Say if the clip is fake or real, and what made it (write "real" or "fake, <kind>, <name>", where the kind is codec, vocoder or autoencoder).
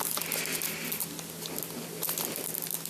real